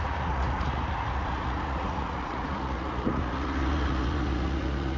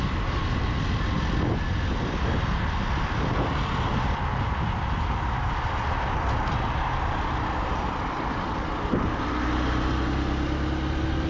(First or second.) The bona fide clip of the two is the second